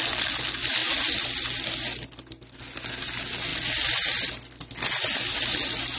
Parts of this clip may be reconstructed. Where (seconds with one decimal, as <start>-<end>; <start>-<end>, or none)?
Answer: none